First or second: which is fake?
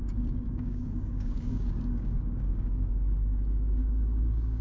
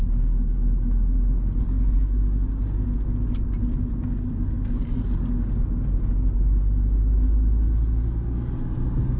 first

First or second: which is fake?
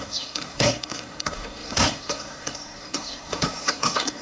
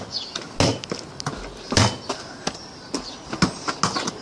first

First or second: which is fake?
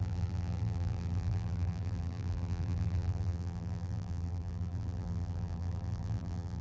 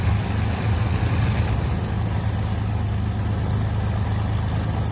first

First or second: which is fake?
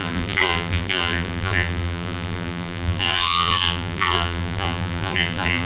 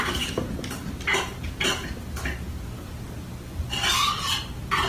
first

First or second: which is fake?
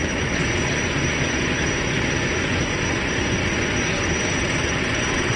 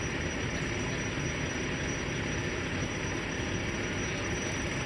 first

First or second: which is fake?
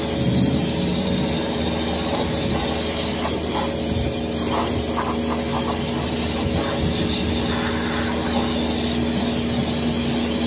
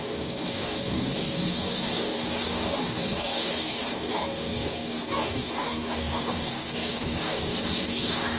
second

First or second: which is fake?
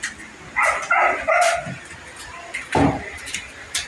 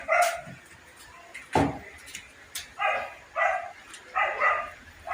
first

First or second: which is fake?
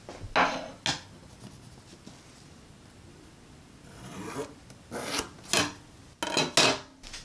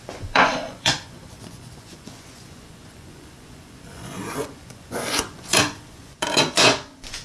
second